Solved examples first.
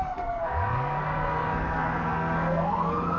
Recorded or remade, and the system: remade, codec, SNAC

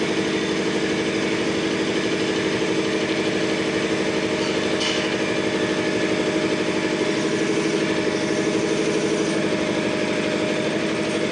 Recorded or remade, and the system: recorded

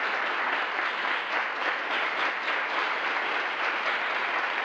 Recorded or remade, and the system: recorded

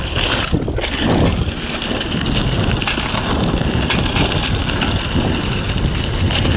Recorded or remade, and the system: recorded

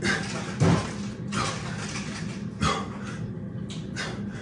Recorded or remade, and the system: recorded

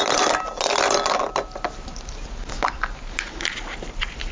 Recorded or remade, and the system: recorded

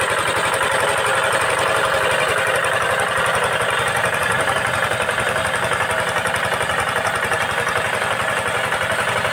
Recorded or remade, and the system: remade, vocoder, BigVGAN v2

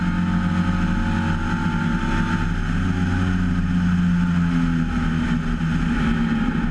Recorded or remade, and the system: recorded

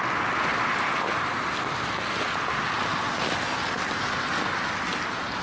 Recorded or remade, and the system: recorded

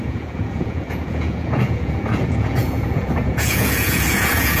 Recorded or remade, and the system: remade, vocoder, Vocos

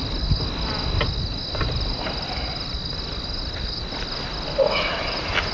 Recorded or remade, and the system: recorded